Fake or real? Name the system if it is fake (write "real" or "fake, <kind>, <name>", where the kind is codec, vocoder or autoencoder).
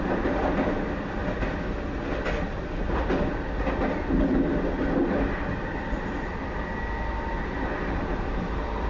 real